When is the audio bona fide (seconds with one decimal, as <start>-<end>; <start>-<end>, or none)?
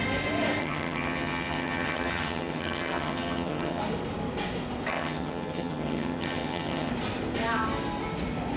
0.0-0.6; 3.8-4.9; 6.9-8.6